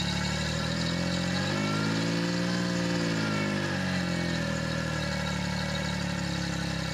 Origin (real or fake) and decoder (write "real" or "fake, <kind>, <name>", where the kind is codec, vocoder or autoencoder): real